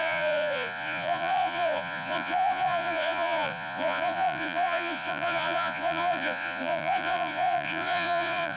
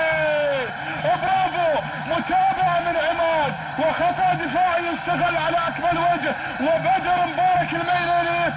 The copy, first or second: first